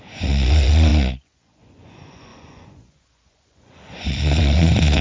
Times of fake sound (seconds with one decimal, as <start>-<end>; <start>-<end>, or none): 0.0-5.0